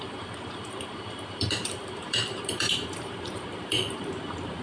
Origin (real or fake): fake